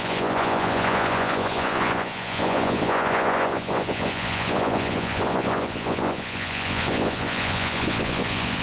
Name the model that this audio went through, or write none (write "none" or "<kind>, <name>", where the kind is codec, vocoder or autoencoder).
vocoder, Vocos